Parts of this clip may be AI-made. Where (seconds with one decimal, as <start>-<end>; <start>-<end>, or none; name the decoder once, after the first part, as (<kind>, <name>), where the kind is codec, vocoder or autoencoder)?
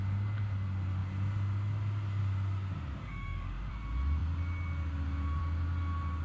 3.0-3.7 (autoencoder, DAC-VAE)